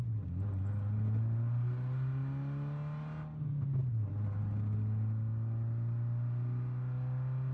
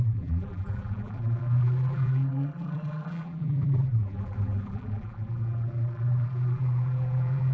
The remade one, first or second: second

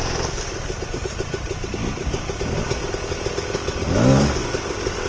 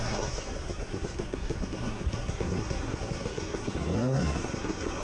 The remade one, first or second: second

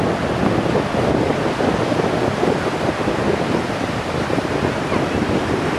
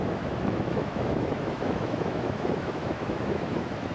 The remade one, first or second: second